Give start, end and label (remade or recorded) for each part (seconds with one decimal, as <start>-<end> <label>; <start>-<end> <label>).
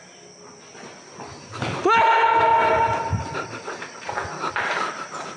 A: 0.0-5.4 recorded